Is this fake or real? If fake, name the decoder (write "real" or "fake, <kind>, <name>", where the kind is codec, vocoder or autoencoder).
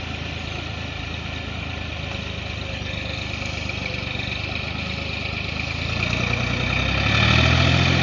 real